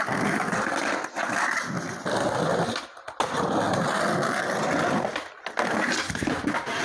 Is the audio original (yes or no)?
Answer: yes